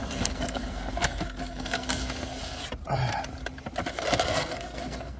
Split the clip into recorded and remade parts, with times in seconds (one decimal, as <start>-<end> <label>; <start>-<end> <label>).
0.0-2.6 remade; 2.6-3.9 recorded; 3.9-5.2 remade